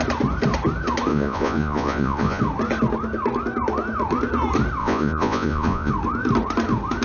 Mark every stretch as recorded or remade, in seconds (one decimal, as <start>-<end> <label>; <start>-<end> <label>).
0.0-1.1 recorded; 1.1-2.4 remade; 2.4-4.8 recorded; 4.8-5.9 remade; 5.9-7.0 recorded